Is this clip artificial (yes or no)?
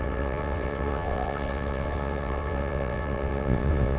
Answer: yes